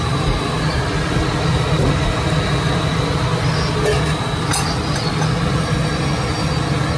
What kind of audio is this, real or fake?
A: real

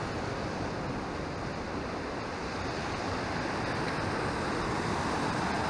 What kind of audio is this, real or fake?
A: real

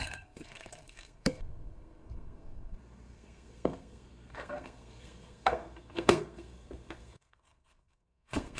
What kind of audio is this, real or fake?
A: fake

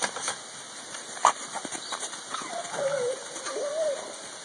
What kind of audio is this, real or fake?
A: real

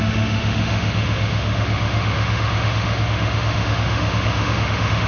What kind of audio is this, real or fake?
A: fake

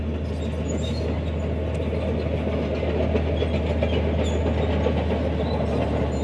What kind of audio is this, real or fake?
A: real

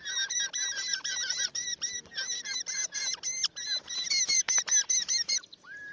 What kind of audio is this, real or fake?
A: real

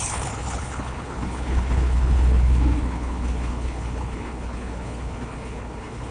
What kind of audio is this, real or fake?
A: fake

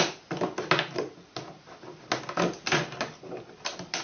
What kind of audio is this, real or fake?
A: real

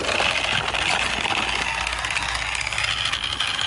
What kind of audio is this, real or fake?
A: real